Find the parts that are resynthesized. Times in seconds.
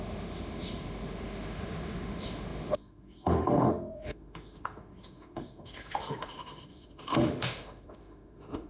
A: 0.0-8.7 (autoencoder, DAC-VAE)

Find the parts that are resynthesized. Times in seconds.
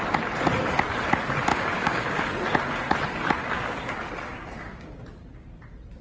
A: 1.5-2.2 (codec, DAC); 3.4-3.9; 4.3-5.0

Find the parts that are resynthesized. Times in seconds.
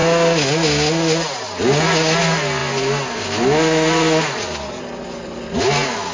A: none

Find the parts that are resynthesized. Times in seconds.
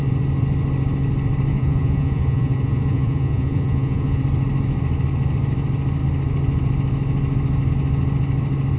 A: 1.5-4.2 (vocoder, Vocos)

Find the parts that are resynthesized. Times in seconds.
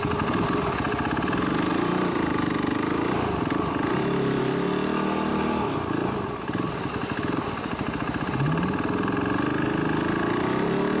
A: 1.7-4.4 (vocoder, BigVGAN v2); 5.3-6.9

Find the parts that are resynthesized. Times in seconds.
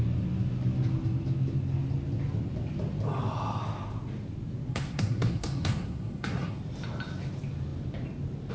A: 4.7-6.6 (codec, SNAC)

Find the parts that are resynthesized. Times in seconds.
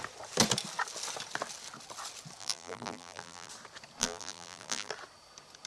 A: 2.4-3.5 (vocoder, BigVGAN v2); 4.0-4.9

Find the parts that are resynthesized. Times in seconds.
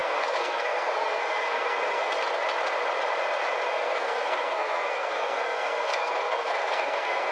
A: 0.0-2.1 (codec, SNAC); 3.7-7.3